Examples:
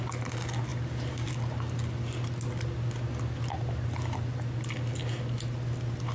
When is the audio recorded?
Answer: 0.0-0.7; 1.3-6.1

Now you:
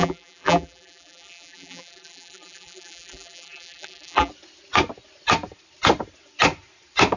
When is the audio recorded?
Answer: 4.3-7.2

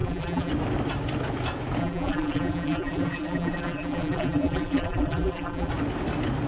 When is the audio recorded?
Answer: 0.5-1.8; 5.7-6.5

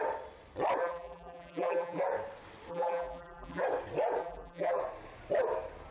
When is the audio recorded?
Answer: 0.0-0.8; 2.0-2.7; 3.6-4.2; 4.8-5.9

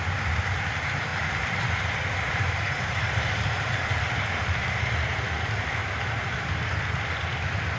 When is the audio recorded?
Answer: 0.0-1.1; 3.9-5.8; 6.5-7.8

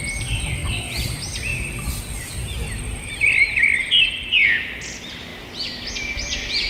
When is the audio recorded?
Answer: 0.0-6.7

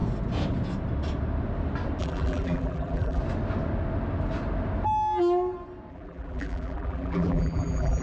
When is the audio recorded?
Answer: 0.0-2.0; 3.2-5.9

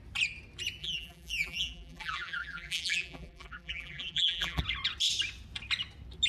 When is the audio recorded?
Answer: 0.0-0.8; 4.6-6.3